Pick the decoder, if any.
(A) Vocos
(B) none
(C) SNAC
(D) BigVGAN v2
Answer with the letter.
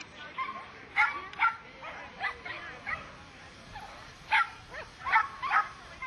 B